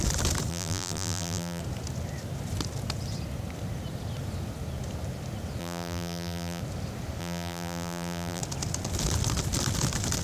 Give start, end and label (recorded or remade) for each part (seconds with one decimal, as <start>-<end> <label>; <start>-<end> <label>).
0.0-0.5 recorded; 0.5-1.6 remade; 1.6-5.6 recorded; 5.6-6.6 remade; 6.6-7.2 recorded; 7.2-8.4 remade; 8.4-10.2 recorded